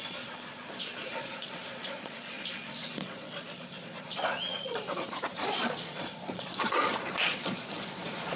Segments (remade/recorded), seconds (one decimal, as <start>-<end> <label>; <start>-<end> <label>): 0.0-8.4 remade